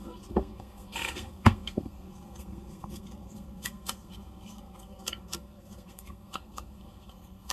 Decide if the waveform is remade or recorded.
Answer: remade